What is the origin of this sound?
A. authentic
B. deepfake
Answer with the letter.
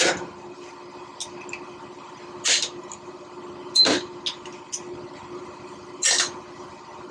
A